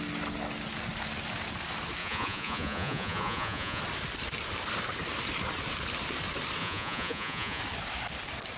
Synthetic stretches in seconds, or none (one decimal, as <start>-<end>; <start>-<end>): 2.0-3.8; 6.6-7.6